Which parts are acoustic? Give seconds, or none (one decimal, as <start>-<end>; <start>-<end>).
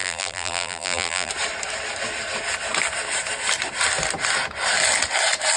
1.3-5.6